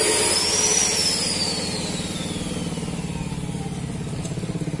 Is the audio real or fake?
real